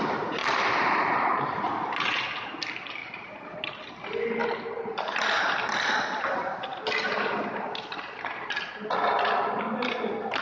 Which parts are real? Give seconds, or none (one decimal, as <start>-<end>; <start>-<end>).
0.0-0.4; 1.7-3.0; 3.7-4.4; 5.3-10.4